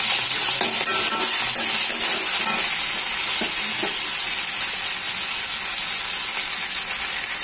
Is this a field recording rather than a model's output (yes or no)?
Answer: yes